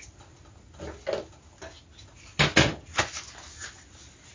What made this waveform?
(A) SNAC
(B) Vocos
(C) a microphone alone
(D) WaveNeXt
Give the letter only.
C